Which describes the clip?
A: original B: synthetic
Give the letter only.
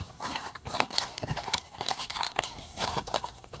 B